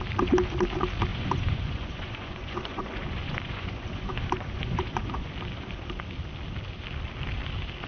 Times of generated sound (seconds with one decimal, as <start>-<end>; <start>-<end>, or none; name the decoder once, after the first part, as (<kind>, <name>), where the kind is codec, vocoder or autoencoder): 1.1-5.3 (vocoder, Vocos)